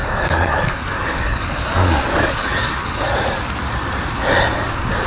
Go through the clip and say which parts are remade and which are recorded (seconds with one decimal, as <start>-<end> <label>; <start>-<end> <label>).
0.0-3.1 remade; 3.1-5.1 recorded